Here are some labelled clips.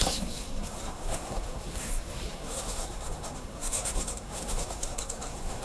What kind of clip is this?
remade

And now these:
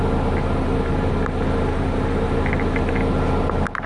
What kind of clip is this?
recorded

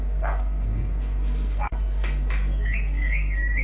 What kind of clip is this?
remade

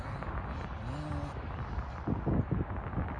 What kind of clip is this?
recorded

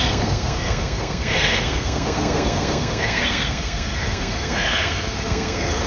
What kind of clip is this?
remade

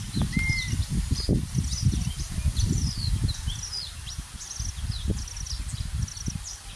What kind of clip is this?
recorded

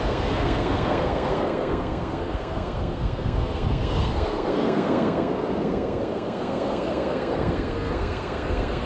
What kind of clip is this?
remade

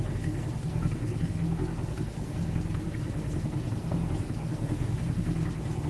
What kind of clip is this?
remade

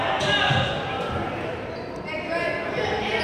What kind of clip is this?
recorded